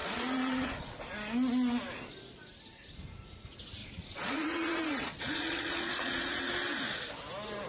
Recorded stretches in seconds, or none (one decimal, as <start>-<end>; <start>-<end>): 0.7-3.8; 6.4-7.7